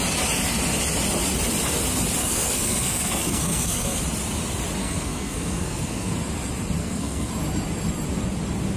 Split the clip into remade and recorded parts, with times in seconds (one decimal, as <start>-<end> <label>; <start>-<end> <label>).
0.0-2.2 recorded; 2.2-4.0 remade; 4.0-4.8 recorded; 4.8-6.1 remade; 6.1-6.8 recorded; 6.8-7.3 remade; 7.3-8.8 recorded